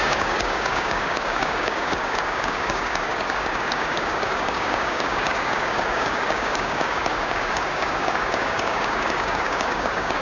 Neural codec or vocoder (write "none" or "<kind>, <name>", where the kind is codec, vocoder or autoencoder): codec, DAC